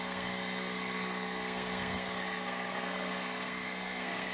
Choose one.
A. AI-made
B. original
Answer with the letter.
A